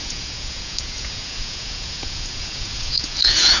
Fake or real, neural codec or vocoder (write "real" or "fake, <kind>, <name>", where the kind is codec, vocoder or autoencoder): fake, vocoder, Vocos